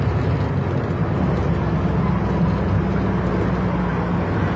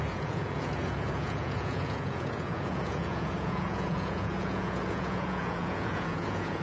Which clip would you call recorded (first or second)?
first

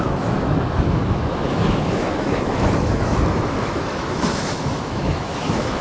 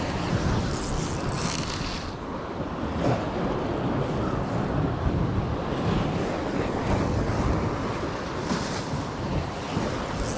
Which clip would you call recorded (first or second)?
second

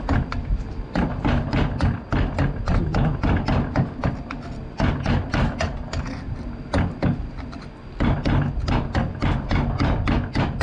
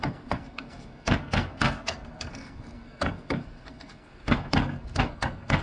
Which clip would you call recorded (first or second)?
first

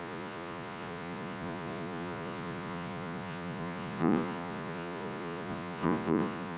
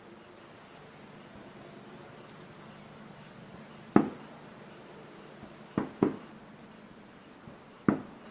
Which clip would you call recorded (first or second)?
second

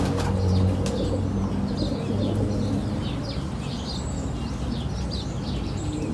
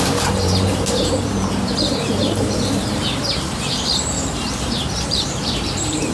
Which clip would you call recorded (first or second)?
first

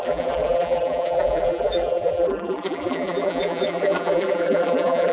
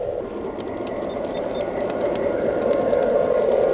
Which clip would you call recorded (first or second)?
second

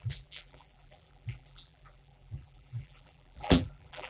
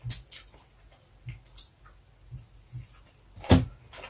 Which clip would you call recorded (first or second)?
second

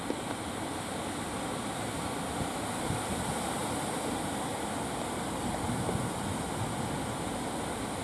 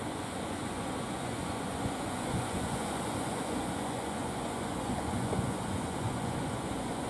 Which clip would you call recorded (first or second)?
first